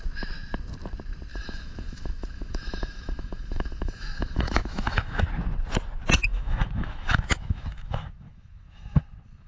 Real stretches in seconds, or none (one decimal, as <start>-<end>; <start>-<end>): 0.0-1.3; 5.2-6.3; 9.0-9.5